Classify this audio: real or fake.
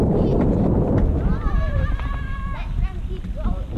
real